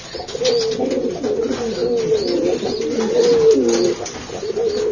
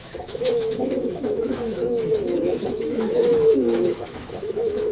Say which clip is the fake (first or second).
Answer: second